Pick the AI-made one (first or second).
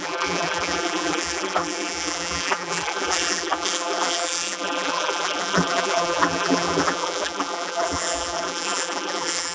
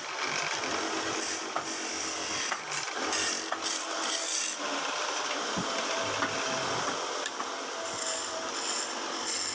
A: first